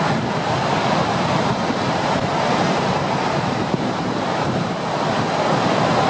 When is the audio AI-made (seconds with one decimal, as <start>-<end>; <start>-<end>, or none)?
1.0-4.7